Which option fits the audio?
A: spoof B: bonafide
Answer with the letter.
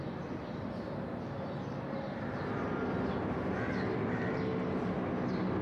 B